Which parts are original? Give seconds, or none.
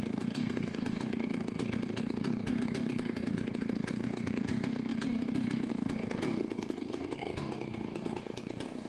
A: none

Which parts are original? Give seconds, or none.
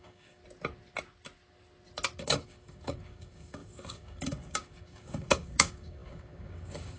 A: 0.4-2.2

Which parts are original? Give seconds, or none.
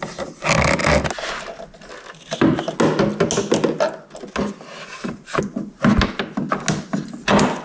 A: 0.0-7.6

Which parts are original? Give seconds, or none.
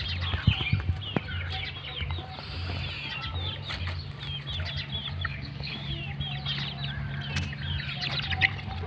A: 0.0-5.3; 5.9-8.9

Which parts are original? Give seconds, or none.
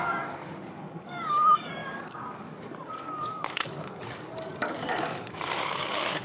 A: none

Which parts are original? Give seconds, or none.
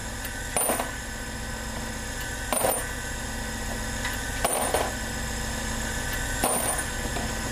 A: 0.0-7.5